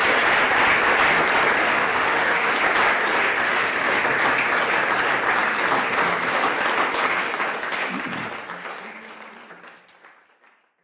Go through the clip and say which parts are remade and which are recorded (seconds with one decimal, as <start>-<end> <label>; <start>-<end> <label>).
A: 0.0-1.6 recorded; 1.6-2.5 remade; 2.5-3.1 recorded; 3.1-4.0 remade; 4.0-10.8 recorded